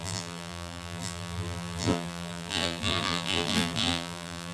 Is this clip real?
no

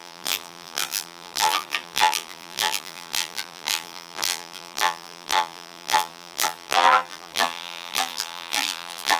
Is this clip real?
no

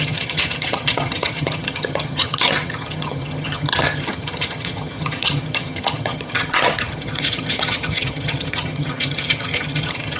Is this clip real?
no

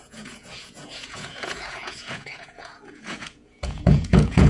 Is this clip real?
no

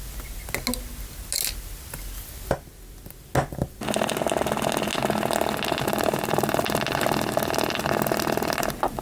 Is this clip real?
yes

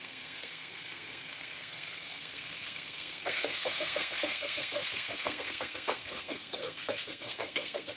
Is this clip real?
no